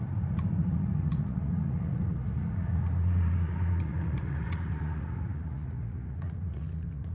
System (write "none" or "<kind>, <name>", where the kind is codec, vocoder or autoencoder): vocoder, Vocos